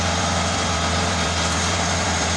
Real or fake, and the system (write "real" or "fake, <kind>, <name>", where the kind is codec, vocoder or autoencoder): fake, vocoder, BigVGAN v2